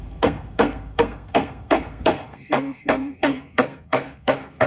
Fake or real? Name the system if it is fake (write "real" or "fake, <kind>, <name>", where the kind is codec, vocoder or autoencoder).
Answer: fake, codec, SNAC